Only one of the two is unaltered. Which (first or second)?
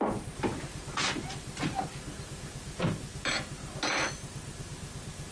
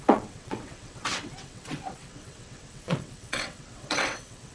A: first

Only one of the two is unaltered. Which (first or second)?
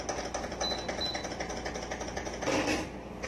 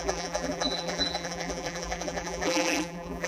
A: first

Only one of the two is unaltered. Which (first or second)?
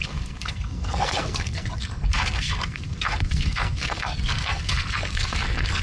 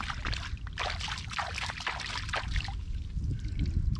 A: second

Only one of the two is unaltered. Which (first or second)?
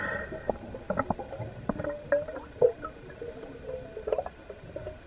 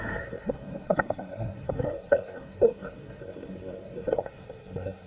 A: first